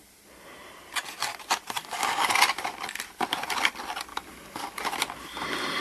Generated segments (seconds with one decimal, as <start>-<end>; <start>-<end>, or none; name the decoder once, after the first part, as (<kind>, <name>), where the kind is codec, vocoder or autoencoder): 1.8-2.3 (codec, DAC); 4.1-4.8